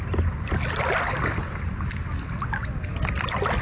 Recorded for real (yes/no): yes